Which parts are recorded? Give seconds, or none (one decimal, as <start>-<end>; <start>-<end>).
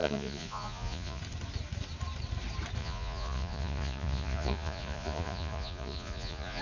1.2-2.8